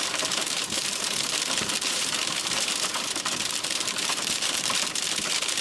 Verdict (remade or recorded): remade